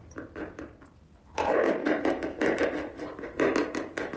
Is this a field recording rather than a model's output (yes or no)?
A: yes